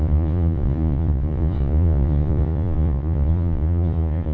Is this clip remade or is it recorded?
remade